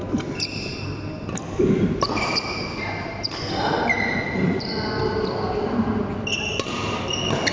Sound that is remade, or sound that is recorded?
recorded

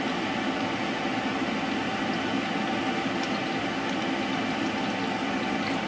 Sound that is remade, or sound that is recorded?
recorded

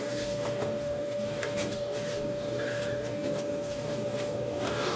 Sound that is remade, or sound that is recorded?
remade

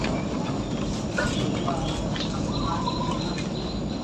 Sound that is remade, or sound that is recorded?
recorded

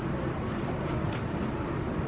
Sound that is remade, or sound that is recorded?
recorded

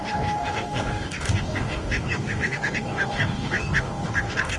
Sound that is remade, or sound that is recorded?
remade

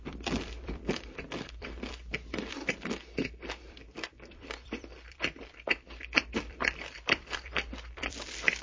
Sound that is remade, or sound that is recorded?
remade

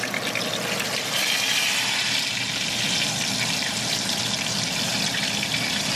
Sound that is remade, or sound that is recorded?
recorded